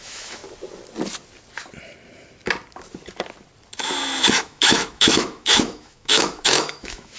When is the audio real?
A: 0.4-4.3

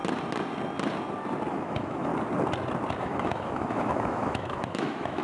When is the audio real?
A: 0.0-1.5; 2.1-3.0

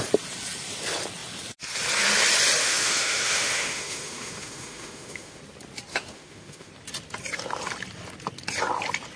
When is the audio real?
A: 0.0-2.6; 5.4-5.9; 6.7-9.2

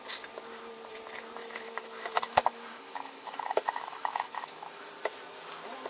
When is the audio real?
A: 0.0-1.4; 4.9-5.9

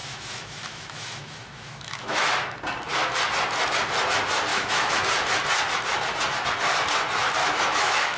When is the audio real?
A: 2.3-4.5; 5.0-7.4